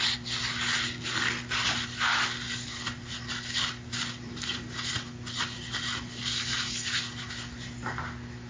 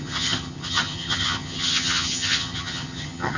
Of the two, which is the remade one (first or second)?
second